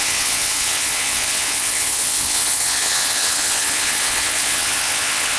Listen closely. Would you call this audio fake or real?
fake